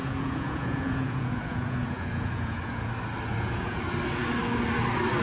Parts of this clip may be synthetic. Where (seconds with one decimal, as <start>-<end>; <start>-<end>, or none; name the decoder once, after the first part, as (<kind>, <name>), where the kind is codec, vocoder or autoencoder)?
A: 0.0-2.9 (vocoder, Vocos); 3.3-3.8